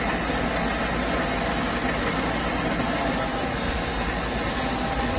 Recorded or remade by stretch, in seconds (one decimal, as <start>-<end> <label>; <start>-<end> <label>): 0.0-5.2 recorded